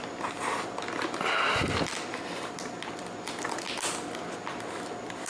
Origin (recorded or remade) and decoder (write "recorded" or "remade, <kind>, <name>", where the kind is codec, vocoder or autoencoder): recorded